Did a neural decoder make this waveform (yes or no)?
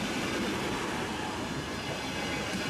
no